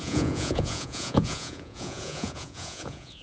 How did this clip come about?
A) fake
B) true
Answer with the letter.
A